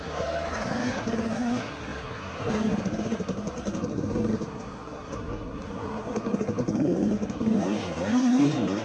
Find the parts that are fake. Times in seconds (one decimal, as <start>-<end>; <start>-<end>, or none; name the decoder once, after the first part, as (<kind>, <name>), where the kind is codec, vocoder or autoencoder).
0.0-8.8 (codec, SNAC)